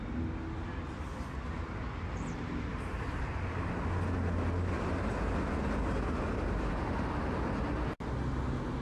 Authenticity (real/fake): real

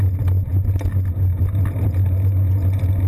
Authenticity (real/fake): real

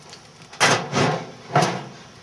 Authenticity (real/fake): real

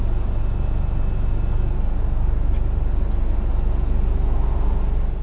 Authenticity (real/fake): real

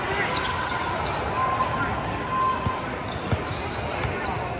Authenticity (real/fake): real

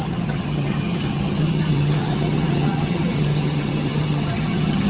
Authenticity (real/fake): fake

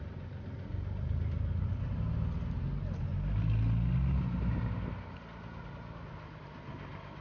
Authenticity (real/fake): real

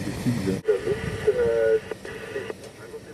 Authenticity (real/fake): real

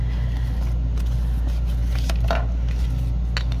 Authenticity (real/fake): real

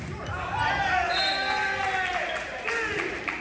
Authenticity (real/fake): real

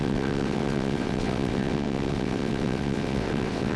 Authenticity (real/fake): fake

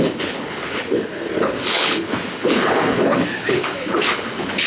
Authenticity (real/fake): fake